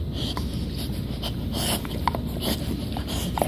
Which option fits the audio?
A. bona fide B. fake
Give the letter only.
B